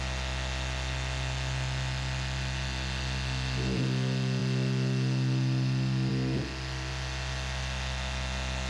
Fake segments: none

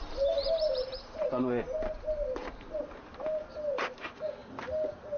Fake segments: 0.0-4.4 (vocoder, BigVGAN v2)

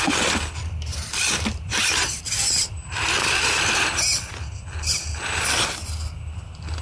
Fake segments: 0.9-4.0 (vocoder, BigVGAN v2)